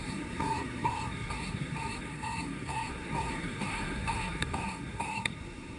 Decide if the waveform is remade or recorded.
remade